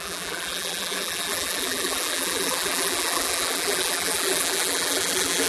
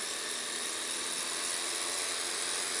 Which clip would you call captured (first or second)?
second